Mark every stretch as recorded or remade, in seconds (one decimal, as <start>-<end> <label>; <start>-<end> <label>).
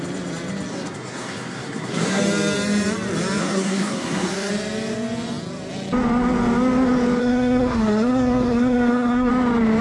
0.0-0.7 recorded; 0.7-2.2 remade; 2.2-3.4 recorded; 3.4-4.5 remade; 4.5-7.2 recorded; 7.2-9.3 remade; 9.3-9.8 recorded